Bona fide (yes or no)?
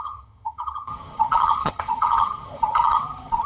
no